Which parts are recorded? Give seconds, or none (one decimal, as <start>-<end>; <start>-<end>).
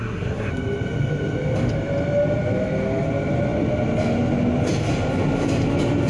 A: 0.5-6.1